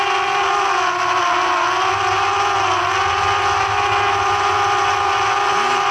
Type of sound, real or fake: real